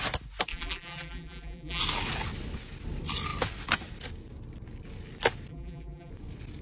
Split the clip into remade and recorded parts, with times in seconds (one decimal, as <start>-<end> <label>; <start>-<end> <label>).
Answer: 0.0-0.5 recorded; 0.5-1.8 remade; 1.8-5.5 recorded; 5.5-6.1 remade; 6.1-6.6 recorded